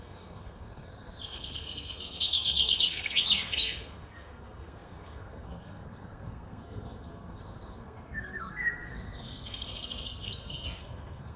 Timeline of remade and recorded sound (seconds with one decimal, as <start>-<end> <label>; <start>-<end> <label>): 0.0-11.4 remade